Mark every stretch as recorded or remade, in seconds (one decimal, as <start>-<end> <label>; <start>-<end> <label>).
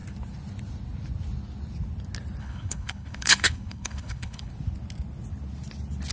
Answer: 0.0-2.4 recorded; 2.4-4.5 remade; 4.5-6.1 recorded